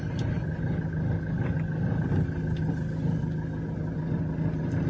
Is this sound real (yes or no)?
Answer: yes